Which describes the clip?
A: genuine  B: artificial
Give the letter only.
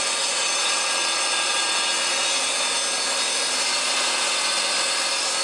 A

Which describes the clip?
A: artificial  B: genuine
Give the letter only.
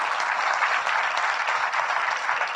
B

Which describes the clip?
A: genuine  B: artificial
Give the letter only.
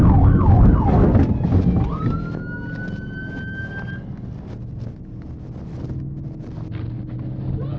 A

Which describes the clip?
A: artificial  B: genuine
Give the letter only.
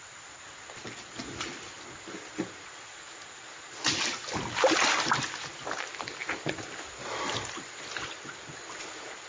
B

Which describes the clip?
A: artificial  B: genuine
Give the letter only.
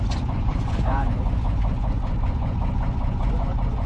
A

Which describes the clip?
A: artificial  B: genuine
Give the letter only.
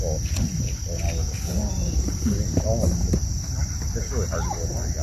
B